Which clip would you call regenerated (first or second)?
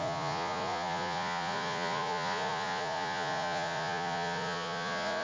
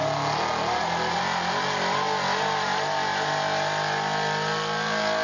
first